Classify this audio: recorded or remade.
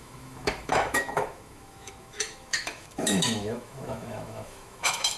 remade